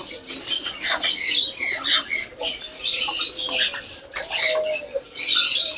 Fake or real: real